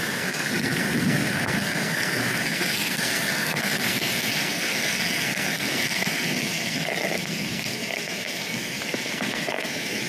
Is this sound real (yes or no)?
no